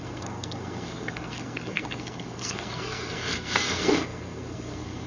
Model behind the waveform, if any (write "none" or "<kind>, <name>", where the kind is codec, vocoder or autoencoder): codec, SNAC